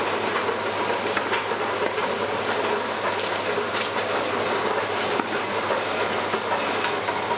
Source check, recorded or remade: recorded